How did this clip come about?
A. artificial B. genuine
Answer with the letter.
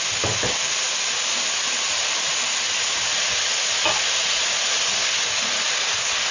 B